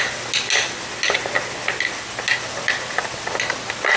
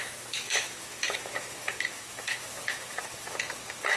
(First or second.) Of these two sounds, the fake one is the second